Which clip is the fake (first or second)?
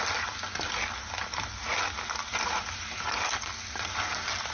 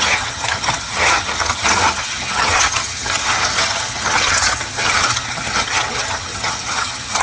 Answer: second